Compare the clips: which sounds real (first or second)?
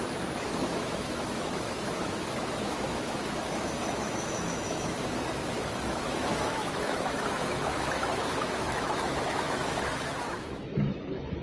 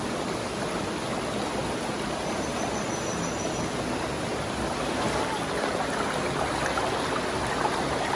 second